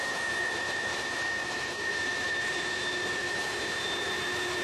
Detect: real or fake real